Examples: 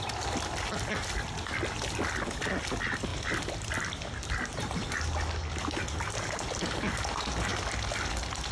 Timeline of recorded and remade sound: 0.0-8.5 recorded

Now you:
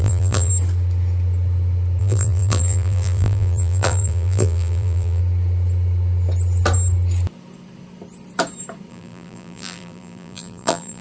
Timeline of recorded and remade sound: 0.0-0.5 remade; 0.5-2.0 recorded; 2.0-5.2 remade; 5.2-8.9 recorded; 8.9-11.0 remade